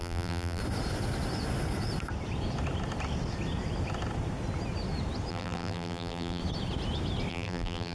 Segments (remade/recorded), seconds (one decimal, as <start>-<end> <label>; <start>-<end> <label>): 0.0-0.6 remade; 0.6-5.3 recorded; 5.3-6.4 remade; 6.4-7.3 recorded; 7.3-7.9 remade

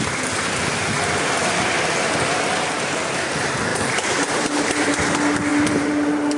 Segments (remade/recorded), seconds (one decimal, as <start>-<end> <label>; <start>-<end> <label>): 0.0-3.7 recorded; 3.7-5.0 remade; 5.0-5.5 recorded; 5.5-6.4 remade

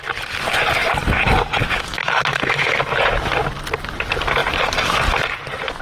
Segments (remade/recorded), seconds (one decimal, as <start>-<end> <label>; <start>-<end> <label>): 0.0-1.6 recorded; 1.6-2.8 remade; 2.8-5.8 recorded

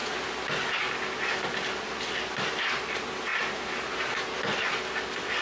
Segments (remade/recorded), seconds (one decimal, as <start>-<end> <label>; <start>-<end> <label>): 0.0-5.4 recorded

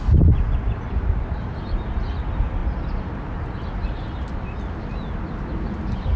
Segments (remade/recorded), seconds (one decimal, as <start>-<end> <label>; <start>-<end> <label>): 0.0-6.2 recorded

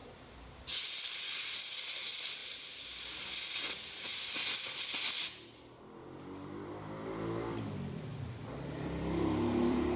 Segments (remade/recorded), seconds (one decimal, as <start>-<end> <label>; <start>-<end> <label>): 0.0-0.9 remade; 0.9-2.4 recorded; 2.4-3.5 remade; 3.5-8.1 recorded; 8.1-10.0 remade